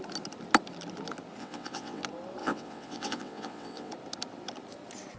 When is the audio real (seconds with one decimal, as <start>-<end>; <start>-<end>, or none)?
0.0-1.4; 2.0-2.4; 3.9-5.2